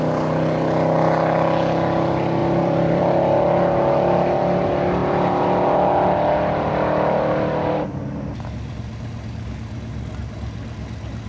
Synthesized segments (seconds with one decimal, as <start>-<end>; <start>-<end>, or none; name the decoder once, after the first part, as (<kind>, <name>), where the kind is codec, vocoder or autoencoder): 2.4-3.0 (vocoder, BigVGAN v2)